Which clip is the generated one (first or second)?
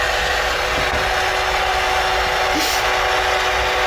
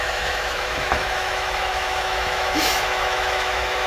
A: second